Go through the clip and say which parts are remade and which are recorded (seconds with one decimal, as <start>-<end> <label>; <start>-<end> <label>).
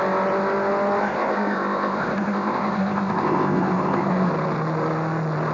0.0-1.0 recorded; 1.0-4.3 remade; 4.3-5.5 recorded